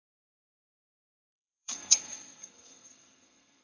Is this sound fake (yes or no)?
yes